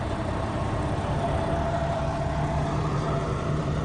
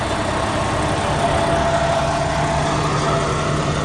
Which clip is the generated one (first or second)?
first